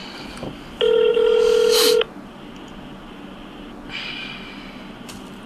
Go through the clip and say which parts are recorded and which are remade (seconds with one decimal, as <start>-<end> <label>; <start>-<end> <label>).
0.0-1.1 remade; 1.1-5.5 recorded